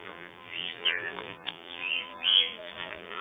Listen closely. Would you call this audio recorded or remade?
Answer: remade